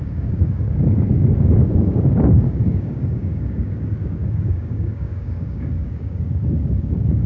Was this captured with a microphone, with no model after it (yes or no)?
no